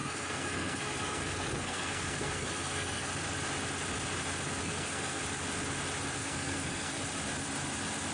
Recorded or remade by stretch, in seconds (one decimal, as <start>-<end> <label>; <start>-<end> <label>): 0.0-3.1 remade; 3.1-4.6 recorded; 4.6-5.2 remade; 5.2-6.2 recorded; 6.2-7.0 remade; 7.0-8.1 recorded